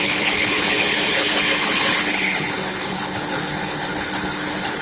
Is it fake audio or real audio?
fake